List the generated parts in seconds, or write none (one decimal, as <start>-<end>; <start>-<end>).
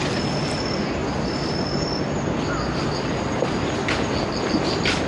none